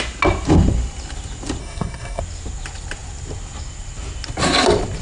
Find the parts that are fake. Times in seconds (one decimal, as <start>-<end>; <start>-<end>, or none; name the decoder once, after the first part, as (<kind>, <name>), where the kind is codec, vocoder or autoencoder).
1.6-2.2 (codec, SNAC)